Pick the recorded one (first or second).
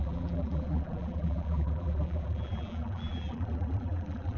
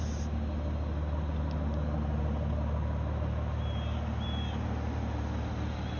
second